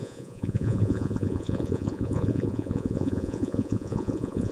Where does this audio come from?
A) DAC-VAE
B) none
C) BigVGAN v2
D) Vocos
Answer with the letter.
D